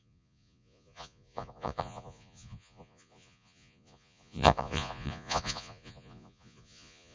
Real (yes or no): no